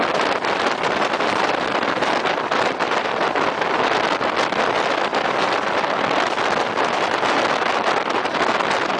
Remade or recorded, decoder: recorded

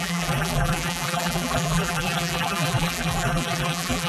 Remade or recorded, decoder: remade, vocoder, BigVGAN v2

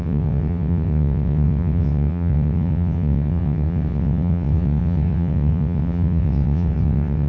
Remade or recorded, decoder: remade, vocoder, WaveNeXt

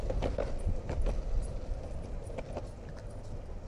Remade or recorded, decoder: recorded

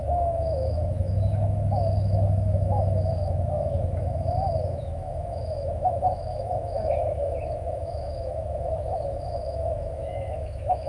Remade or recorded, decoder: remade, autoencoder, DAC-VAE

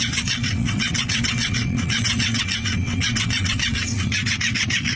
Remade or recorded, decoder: remade, vocoder, WaveNeXt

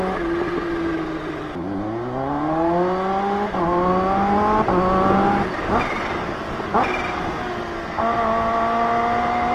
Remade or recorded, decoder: recorded